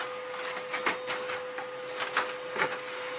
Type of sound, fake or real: real